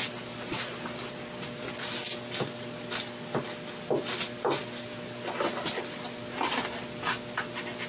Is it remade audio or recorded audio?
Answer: recorded